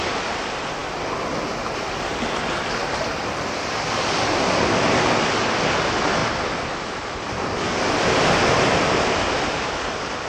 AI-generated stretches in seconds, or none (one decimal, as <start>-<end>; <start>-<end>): 0.0-0.8; 1.7-6.2; 6.8-10.3